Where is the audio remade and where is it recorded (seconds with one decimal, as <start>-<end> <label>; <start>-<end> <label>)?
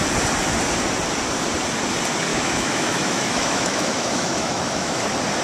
0.0-2.3 recorded; 2.3-5.0 remade; 5.0-5.4 recorded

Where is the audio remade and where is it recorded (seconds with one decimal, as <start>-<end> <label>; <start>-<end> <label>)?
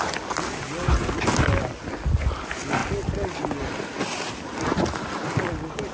0.0-5.9 recorded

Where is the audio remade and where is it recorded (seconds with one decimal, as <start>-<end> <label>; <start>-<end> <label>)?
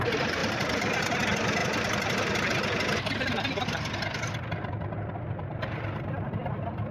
0.0-0.4 recorded; 0.4-1.0 remade; 1.0-5.5 recorded; 5.5-6.1 remade; 6.1-6.9 recorded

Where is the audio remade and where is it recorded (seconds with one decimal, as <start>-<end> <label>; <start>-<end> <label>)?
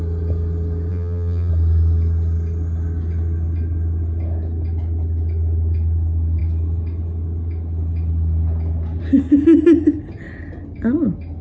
0.0-0.9 recorded; 0.9-1.5 remade; 1.5-11.4 recorded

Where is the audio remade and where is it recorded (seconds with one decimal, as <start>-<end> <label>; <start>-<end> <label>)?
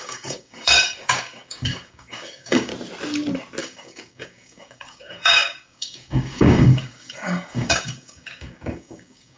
0.0-2.7 remade; 2.7-3.6 recorded; 3.6-9.4 remade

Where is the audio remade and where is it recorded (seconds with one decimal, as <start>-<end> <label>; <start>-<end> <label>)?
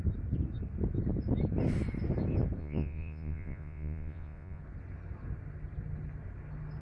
0.0-2.6 recorded; 2.6-4.6 remade; 4.6-6.8 recorded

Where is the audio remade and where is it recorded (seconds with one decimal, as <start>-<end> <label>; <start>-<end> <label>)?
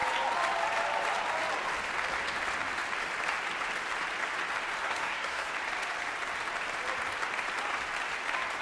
0.0-4.8 recorded; 4.8-5.5 remade; 5.5-8.6 recorded